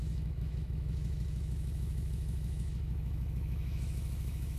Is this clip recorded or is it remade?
remade